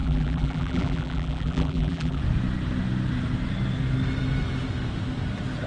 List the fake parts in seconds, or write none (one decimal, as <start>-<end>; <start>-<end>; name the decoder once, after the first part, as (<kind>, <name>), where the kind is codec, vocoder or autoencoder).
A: 0.0-2.2 (vocoder, BigVGAN v2)